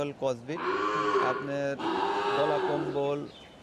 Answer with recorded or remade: recorded